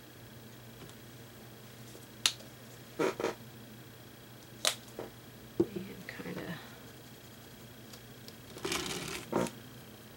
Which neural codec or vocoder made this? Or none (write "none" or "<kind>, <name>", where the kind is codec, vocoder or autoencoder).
none